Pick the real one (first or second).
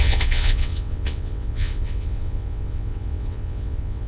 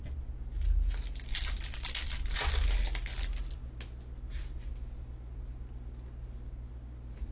second